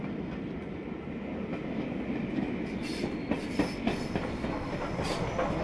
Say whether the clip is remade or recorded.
recorded